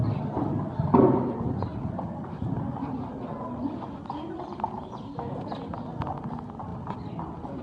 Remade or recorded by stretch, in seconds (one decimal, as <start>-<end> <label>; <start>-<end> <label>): 0.0-7.6 recorded